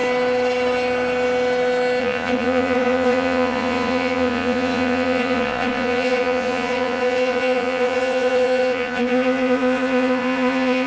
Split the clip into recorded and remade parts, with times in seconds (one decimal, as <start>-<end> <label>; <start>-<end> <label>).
0.0-2.0 recorded; 2.0-10.9 remade